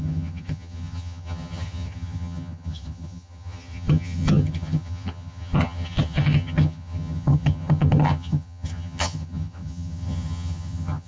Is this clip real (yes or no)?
no